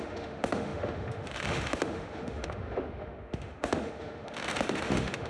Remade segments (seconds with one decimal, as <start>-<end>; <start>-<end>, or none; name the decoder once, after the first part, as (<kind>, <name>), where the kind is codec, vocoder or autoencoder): 0.0-5.3 (autoencoder, DAC-VAE)